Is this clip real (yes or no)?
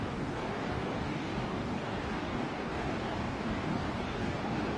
no